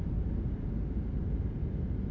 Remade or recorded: recorded